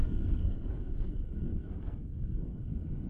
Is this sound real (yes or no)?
no